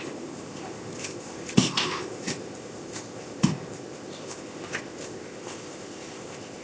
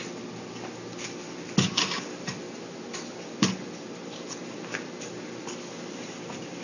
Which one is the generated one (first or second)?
first